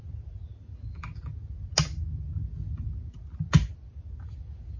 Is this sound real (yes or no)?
yes